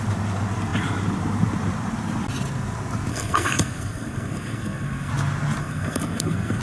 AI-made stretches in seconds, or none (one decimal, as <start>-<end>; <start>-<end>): 3.1-5.1; 5.6-6.6